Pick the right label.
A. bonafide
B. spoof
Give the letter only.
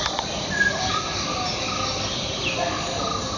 A